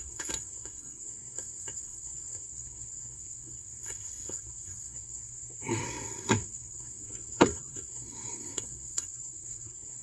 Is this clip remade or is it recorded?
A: remade